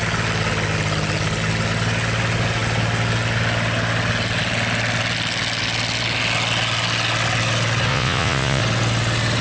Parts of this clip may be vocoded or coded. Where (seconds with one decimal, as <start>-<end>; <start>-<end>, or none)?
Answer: 7.9-8.6